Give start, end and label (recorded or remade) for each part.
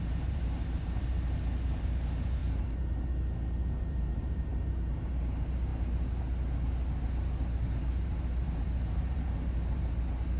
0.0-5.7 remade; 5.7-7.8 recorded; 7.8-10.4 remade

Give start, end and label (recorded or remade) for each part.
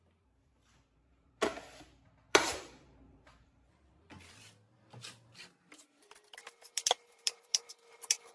0.0-1.5 remade; 1.5-2.3 recorded; 2.3-4.1 remade; 4.1-5.8 recorded; 5.8-8.3 remade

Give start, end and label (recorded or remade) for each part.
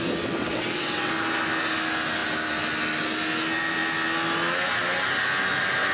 0.0-0.4 recorded; 0.4-1.1 remade; 1.1-5.9 recorded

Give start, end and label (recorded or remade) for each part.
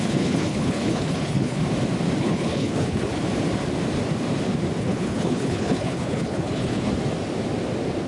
0.0-1.6 remade; 1.6-2.2 recorded; 2.2-3.1 remade; 3.1-4.8 recorded; 4.8-6.9 remade; 6.9-8.1 recorded